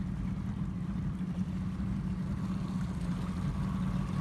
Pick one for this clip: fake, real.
real